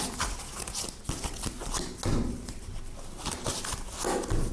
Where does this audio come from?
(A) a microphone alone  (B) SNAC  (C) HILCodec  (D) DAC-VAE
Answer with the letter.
A